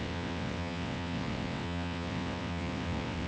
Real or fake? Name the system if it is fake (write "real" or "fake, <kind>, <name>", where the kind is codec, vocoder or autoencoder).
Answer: fake, vocoder, WaveNeXt